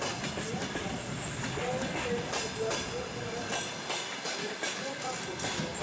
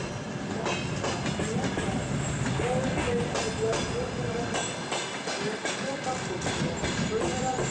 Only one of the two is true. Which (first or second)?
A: second